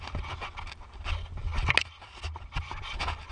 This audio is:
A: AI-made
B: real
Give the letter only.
B